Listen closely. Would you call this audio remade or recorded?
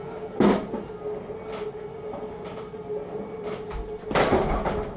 recorded